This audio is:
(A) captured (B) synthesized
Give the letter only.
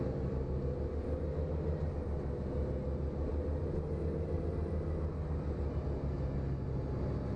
A